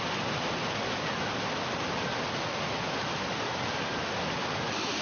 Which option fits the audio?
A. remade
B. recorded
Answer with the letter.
B